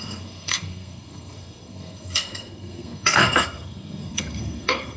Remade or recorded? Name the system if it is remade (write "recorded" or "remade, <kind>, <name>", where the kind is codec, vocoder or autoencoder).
remade, codec, SNAC